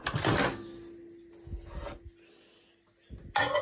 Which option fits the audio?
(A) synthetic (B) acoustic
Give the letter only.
B